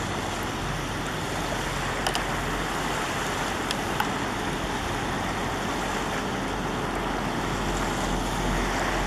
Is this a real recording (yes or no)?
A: yes